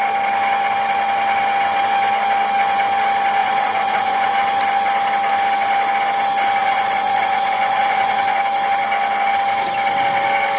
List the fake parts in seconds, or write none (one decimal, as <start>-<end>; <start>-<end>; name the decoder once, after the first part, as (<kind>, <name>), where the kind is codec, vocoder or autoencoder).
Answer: 3.4-4.3 (vocoder, Vocos); 6.6-8.4